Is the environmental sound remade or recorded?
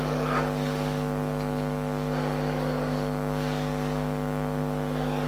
remade